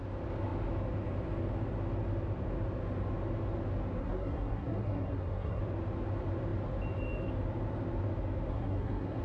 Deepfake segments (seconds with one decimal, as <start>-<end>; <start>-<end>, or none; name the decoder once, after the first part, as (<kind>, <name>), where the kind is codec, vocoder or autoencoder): 4.0-5.6 (codec, SNAC); 8.5-9.2